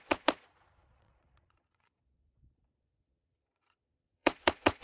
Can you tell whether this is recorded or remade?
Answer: remade